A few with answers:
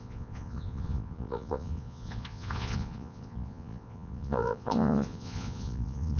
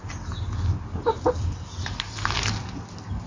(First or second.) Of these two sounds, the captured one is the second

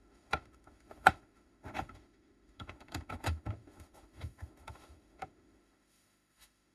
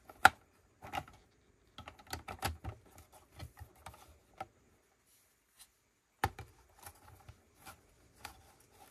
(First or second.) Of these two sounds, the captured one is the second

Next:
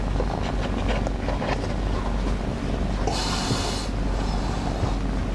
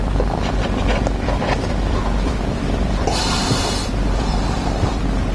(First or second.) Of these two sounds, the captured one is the first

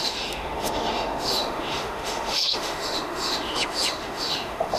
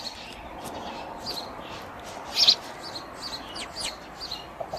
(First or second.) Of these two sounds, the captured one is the second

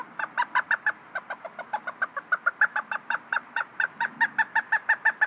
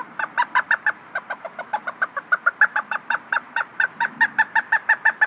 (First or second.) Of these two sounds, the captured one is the first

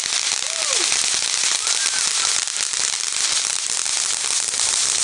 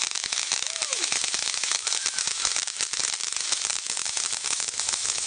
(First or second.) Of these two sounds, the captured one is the first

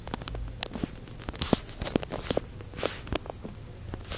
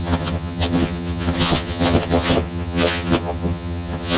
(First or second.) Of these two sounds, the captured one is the first